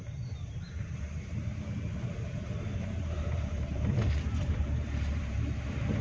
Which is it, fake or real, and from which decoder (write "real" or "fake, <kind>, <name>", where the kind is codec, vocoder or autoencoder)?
fake, vocoder, BigVGAN v2